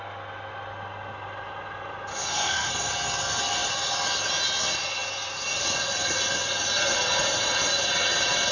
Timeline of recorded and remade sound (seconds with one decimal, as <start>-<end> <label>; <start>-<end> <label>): 0.0-2.1 recorded; 2.1-2.7 remade; 2.7-8.5 recorded